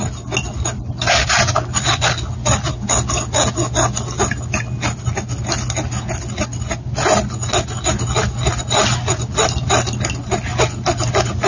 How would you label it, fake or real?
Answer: real